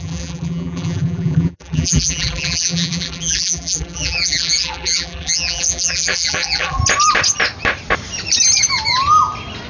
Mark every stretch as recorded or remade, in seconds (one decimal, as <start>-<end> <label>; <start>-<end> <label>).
0.0-6.8 remade; 6.8-9.7 recorded